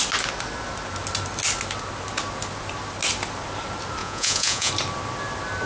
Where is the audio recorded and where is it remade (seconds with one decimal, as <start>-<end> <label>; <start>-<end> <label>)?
0.0-4.0 recorded; 4.0-4.7 remade; 4.7-5.7 recorded